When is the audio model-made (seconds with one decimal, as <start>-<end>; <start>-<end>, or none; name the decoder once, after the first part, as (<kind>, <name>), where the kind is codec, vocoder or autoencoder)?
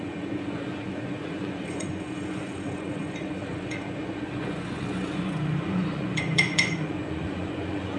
0.0-8.0 (vocoder, Vocos)